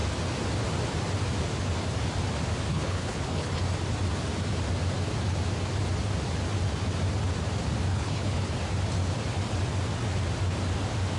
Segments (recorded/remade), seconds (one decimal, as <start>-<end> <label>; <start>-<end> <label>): 0.0-2.7 recorded; 2.7-3.6 remade; 3.6-7.9 recorded; 7.9-8.5 remade; 8.5-11.2 recorded